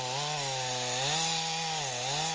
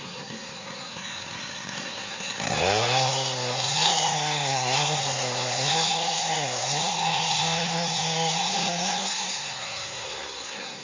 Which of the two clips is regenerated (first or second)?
second